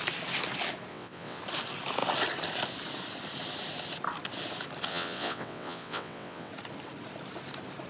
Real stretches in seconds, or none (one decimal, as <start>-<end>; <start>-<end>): 0.0-0.9; 1.4-4.9; 6.5-7.9